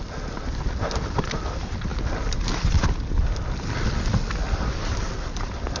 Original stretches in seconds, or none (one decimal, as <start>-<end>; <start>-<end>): 0.0-5.8